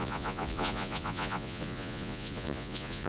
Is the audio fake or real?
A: fake